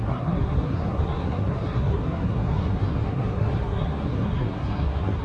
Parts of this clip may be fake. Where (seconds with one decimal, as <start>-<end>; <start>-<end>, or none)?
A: 0.0-5.2